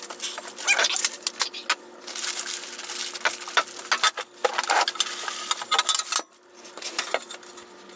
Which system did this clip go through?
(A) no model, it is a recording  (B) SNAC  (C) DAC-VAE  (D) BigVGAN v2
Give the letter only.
A